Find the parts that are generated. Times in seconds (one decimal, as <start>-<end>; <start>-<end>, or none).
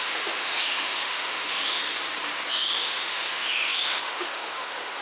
0.0-1.8; 2.5-5.0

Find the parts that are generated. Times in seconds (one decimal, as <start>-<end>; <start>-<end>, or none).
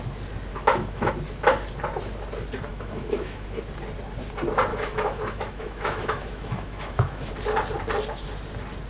0.5-1.1; 2.7-3.6; 4.7-7.3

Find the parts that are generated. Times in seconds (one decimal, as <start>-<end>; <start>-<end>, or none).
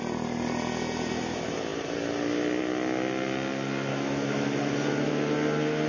3.9-5.1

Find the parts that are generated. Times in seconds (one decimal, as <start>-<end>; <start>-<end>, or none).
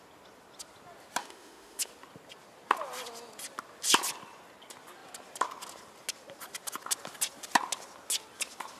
1.2-1.9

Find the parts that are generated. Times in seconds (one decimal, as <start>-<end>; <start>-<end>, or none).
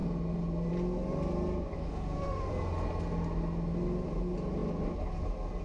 1.8-2.5